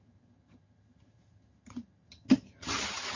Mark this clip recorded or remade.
remade